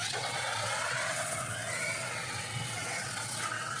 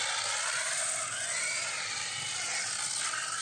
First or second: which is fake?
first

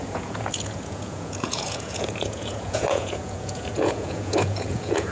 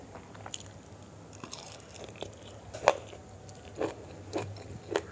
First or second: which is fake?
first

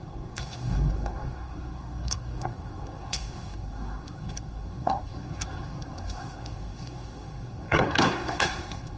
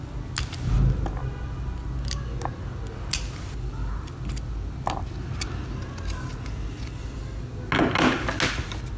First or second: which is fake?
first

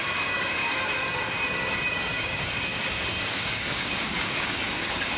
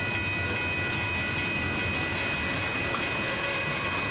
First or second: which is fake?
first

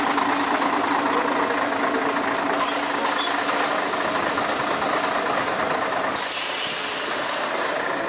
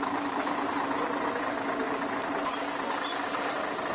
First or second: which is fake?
second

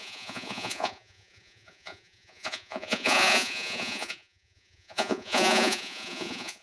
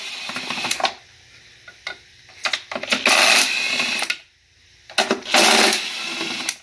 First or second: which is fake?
first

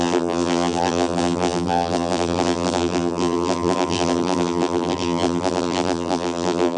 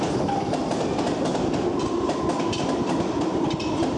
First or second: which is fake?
first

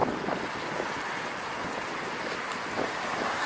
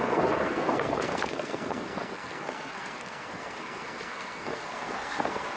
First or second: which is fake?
second